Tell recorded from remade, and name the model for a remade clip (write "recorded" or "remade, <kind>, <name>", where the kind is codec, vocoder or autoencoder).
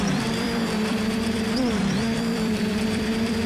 remade, vocoder, BigVGAN v2